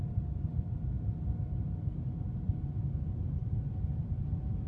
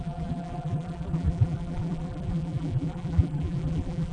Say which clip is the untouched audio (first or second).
first